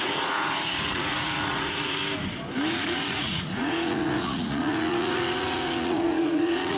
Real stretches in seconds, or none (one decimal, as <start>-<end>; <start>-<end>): 2.0-2.7